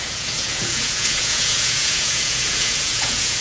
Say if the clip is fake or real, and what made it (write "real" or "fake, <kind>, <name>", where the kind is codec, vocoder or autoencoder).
fake, vocoder, Vocos